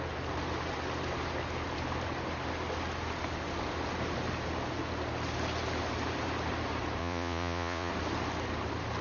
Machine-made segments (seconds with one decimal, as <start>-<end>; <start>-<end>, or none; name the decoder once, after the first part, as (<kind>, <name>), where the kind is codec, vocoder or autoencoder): 7.0-7.9 (vocoder, Vocos)